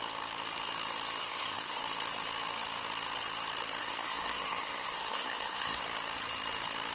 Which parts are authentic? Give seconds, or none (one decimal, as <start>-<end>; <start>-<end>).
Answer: 0.0-1.2; 1.8-3.8; 5.8-6.9